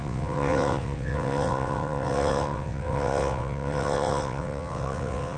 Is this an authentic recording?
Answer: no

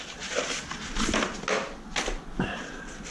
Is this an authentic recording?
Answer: yes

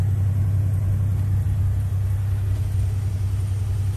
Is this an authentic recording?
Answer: yes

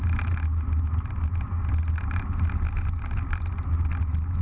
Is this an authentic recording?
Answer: yes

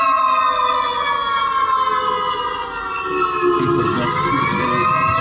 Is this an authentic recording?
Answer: yes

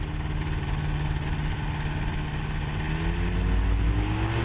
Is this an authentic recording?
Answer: yes